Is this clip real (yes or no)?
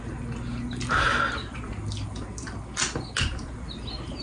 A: yes